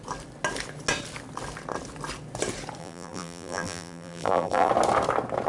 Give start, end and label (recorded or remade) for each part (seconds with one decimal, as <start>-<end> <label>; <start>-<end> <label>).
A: 0.0-2.8 recorded; 2.8-4.7 remade; 4.7-5.5 recorded